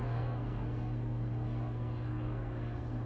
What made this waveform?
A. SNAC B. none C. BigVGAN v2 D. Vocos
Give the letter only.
A